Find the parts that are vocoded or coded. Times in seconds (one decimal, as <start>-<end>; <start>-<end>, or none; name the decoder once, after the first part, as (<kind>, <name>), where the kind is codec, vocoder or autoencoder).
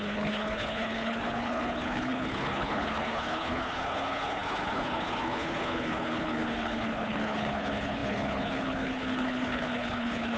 0.0-10.4 (codec, HILCodec)